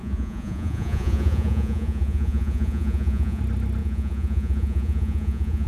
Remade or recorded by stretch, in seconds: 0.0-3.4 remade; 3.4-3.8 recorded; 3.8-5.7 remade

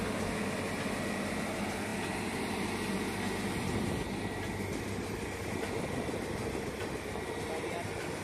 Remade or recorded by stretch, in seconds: 0.0-8.2 recorded

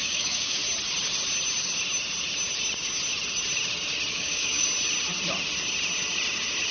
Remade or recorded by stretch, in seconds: 0.0-0.6 remade; 0.6-4.1 recorded; 4.1-4.7 remade; 4.7-6.7 recorded

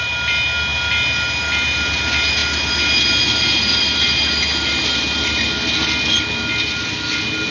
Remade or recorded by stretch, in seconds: 0.0-7.5 recorded